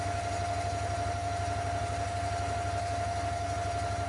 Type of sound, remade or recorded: recorded